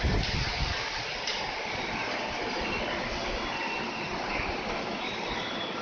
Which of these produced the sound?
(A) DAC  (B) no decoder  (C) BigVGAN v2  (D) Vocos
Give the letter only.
B